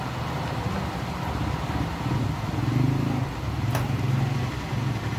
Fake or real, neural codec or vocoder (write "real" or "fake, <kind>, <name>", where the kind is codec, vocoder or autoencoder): real